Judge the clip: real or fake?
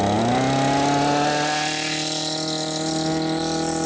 real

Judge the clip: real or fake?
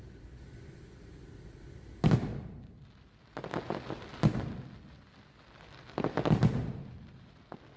real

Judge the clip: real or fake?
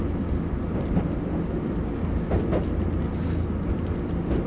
real